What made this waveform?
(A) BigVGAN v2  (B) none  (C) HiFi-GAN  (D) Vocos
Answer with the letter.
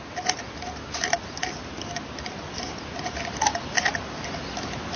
B